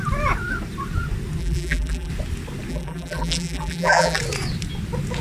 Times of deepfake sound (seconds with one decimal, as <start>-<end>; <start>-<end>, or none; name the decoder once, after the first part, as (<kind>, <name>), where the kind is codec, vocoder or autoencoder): 1.4-2.1 (vocoder, BigVGAN v2); 2.7-4.2